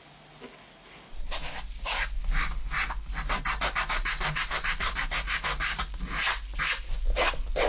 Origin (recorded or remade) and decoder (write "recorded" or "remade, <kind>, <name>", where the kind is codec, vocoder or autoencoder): recorded